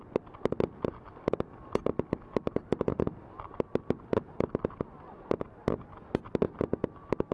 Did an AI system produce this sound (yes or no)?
no